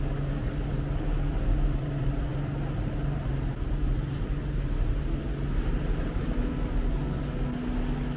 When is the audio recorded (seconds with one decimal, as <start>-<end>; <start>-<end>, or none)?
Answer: 0.0-8.2